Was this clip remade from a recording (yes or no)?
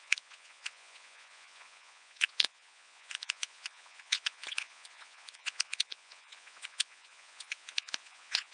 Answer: yes